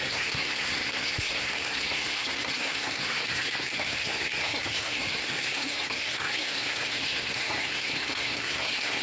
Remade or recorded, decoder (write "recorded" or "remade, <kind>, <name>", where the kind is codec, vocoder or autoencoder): remade, codec, SNAC